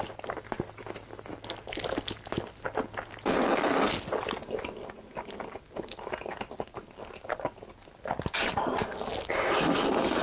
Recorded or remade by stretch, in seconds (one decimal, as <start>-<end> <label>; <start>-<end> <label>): 0.0-10.2 recorded